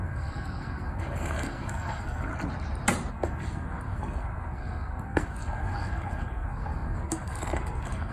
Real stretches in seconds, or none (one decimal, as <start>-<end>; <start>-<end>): 2.3-3.1